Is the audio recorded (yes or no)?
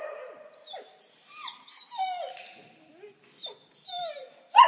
yes